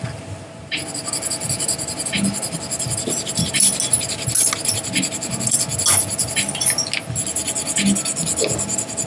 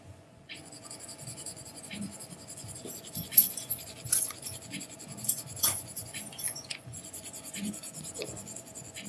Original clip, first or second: first